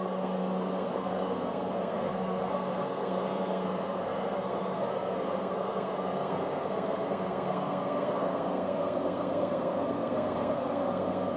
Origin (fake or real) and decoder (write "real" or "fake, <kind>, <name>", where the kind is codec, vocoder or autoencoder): fake, codec, SNAC